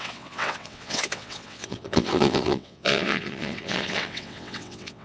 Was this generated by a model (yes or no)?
yes